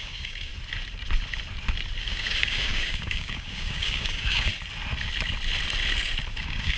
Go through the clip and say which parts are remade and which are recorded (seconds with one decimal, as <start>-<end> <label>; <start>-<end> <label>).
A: 0.0-0.5 remade; 0.5-2.0 recorded; 2.0-4.5 remade; 4.5-6.3 recorded; 6.3-6.8 remade